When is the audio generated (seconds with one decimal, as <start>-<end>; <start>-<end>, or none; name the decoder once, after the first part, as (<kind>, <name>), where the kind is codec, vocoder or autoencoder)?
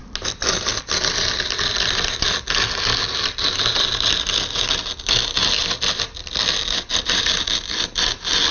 none